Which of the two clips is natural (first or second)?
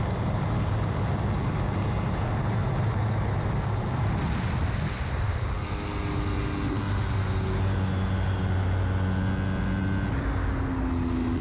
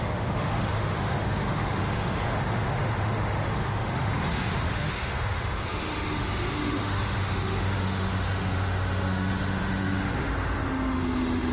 first